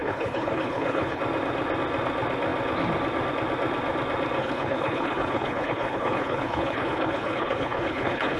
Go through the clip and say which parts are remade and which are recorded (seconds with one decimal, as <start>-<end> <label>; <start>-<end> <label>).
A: 0.0-1.2 remade; 1.2-4.4 recorded; 4.4-8.4 remade